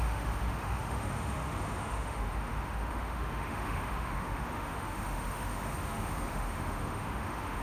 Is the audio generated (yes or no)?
yes